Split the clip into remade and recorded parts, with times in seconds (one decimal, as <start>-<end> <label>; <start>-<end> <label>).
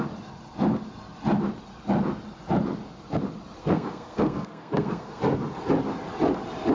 0.0-3.6 recorded; 3.6-5.2 remade; 5.2-6.7 recorded